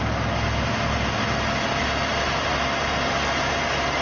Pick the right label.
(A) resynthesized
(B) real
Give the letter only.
B